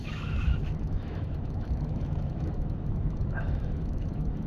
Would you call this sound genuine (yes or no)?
no